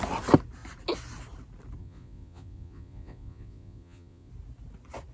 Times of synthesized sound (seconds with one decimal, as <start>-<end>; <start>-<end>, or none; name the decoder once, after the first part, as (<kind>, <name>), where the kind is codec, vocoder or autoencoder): 1.8-4.3 (vocoder, Vocos)